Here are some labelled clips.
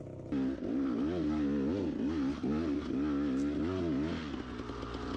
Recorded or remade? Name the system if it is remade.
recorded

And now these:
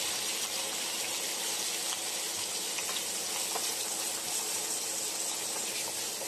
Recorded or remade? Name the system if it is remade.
recorded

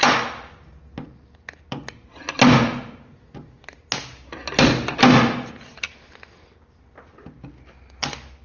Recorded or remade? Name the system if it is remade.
recorded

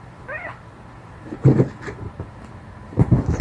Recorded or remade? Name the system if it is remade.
recorded